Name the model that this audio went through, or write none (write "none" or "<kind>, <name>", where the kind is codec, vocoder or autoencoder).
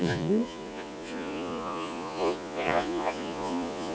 vocoder, Vocos